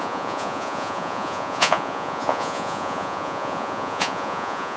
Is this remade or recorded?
remade